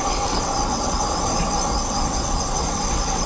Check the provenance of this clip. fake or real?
fake